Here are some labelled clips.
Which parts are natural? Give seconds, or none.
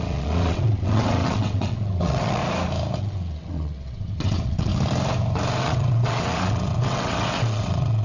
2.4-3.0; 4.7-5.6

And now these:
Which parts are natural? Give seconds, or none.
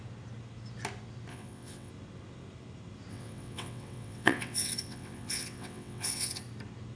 0.0-1.3; 1.9-3.1; 6.4-7.0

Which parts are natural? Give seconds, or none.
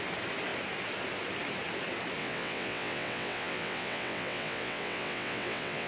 0.0-2.2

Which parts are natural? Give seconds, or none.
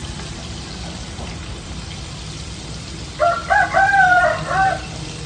0.0-5.3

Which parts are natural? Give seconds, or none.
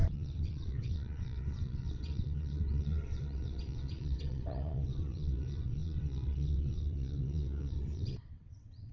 none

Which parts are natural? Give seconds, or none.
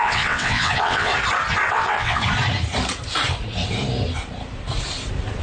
1.1-1.7; 2.2-5.4